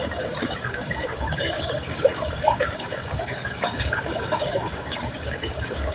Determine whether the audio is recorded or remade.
remade